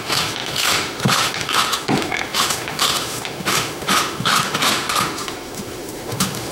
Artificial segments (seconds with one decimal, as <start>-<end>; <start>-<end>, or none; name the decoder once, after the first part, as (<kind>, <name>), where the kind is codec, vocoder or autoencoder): 0.0-6.5 (autoencoder, DAC-VAE)